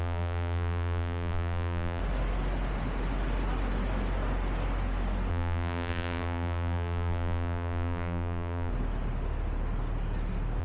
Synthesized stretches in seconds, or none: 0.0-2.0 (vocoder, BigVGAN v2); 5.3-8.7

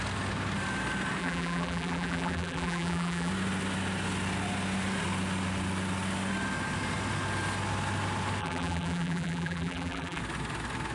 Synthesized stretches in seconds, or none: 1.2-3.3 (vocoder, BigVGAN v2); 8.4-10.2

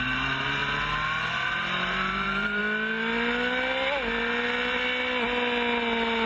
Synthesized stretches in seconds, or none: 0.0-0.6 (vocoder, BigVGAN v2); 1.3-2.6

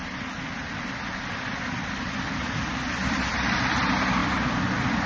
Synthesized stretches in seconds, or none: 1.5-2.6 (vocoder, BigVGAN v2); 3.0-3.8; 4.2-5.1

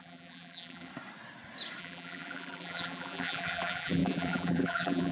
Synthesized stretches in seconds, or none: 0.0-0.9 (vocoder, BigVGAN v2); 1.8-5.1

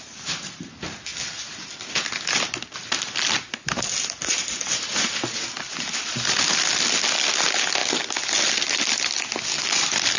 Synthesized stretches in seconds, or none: none

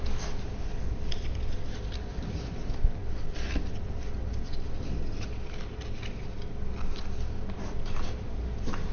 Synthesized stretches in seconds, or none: 2.1-3.0 (vocoder, BigVGAN v2)